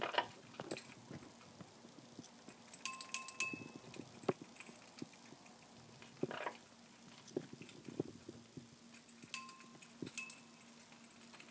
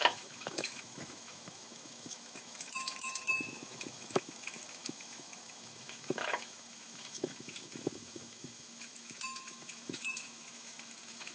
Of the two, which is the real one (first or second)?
first